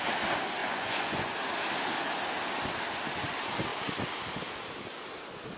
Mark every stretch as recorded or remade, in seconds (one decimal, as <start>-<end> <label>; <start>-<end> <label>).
0.0-0.6 recorded; 0.6-1.3 remade; 1.3-5.6 recorded